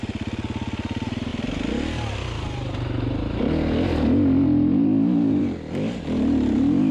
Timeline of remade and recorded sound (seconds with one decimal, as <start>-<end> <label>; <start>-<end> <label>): 0.0-6.9 recorded